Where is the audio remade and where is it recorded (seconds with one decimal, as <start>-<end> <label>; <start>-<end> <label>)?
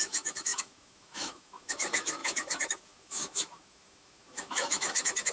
0.0-5.3 remade